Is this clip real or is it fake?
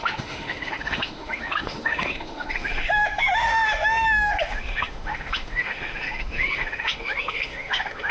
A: fake